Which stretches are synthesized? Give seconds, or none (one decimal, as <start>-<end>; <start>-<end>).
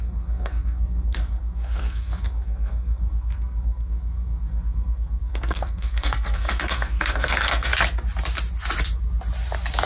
0.0-7.7